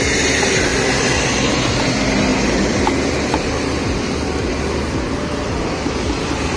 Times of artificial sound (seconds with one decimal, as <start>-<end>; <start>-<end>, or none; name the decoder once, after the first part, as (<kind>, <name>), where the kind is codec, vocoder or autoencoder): 0.7-1.8 (vocoder, BigVGAN v2); 2.3-6.6